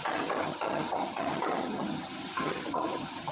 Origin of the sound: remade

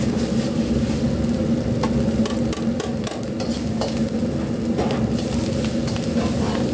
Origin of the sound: recorded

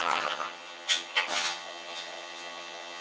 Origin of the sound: remade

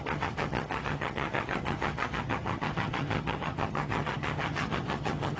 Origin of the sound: remade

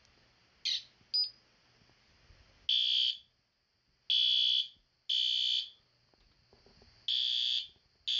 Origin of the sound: recorded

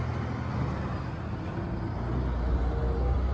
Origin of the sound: recorded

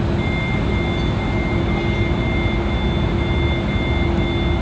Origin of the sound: recorded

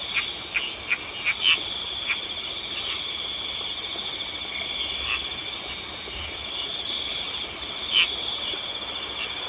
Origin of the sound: recorded